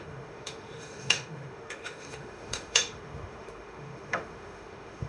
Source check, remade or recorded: remade